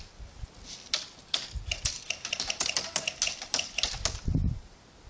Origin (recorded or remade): recorded